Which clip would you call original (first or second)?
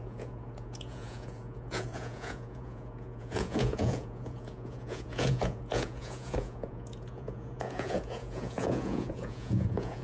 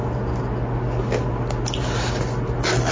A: second